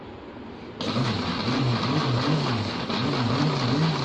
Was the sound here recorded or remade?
recorded